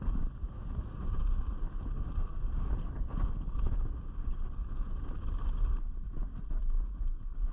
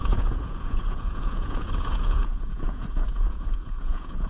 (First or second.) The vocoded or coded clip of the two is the second